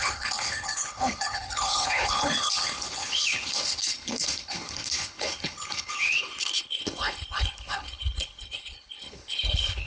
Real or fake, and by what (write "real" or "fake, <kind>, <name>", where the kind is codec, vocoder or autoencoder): fake, codec, HILCodec